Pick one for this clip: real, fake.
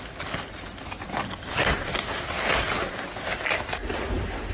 real